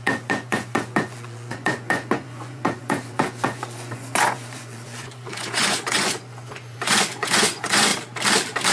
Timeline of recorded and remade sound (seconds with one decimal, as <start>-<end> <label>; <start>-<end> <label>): 0.0-7.9 remade; 7.9-8.7 recorded